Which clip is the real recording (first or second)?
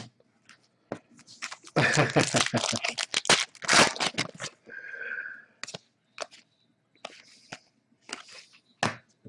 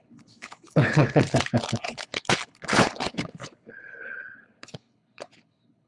first